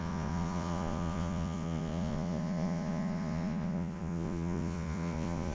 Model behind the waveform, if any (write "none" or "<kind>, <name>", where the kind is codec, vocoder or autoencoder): vocoder, Vocos